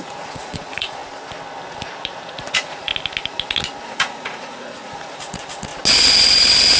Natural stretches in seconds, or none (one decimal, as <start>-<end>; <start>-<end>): 1.0-1.7; 2.9-3.8; 5.7-6.8